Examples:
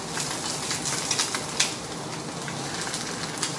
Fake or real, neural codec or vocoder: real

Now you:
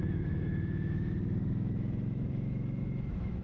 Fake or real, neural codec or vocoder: fake, autoencoder, DAC-VAE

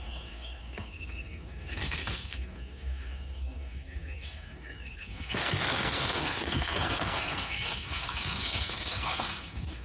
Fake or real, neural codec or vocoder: fake, codec, SNAC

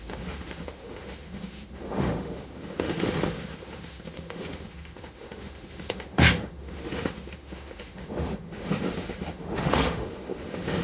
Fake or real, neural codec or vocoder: fake, autoencoder, DAC-VAE